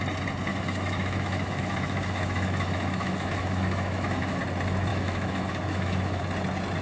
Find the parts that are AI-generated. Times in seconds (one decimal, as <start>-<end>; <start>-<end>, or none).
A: 0.5-4.4; 4.9-6.2